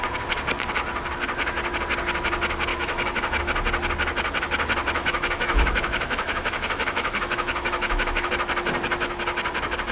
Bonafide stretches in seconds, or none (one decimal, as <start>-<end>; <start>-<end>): 0.0-2.7; 3.4-5.0; 8.3-9.9